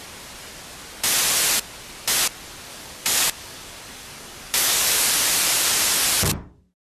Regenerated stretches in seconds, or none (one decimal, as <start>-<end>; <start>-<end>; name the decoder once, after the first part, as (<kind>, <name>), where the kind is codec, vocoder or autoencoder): 2.7-5.1 (codec, DAC)